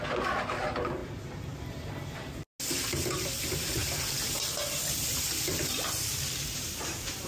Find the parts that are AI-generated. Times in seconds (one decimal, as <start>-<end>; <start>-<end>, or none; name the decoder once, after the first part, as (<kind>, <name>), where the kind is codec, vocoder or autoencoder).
none

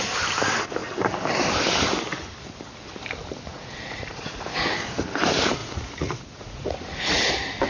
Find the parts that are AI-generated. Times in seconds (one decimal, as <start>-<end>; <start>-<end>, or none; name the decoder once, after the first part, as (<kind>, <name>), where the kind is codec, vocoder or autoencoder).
3.5-5.0 (vocoder, Vocos); 5.6-7.3

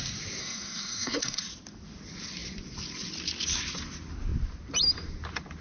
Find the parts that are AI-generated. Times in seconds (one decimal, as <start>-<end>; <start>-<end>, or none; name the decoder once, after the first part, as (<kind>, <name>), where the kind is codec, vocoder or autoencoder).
0.4-1.4 (codec, SNAC)

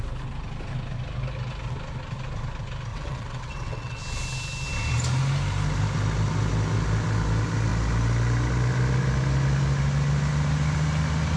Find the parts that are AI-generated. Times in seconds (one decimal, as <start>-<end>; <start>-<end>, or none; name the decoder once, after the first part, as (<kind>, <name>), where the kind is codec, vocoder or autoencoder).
2.9-4.0 (vocoder, WaveNeXt)

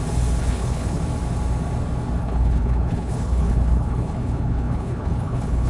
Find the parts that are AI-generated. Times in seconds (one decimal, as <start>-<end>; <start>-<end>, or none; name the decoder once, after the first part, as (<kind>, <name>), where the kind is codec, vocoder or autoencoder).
0.4-1.0 (codec, HILCodec); 2.2-5.7